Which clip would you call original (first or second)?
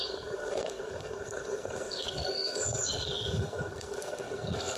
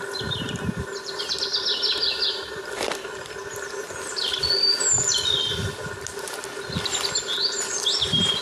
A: second